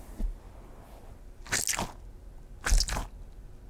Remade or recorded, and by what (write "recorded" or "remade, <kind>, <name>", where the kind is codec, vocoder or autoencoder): recorded